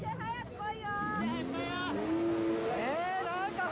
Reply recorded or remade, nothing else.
recorded